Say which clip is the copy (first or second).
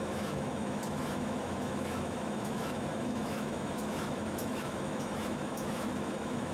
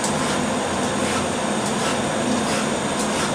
first